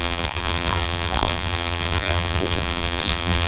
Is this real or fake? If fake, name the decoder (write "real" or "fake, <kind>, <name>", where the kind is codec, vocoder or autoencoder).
fake, vocoder, BigVGAN v2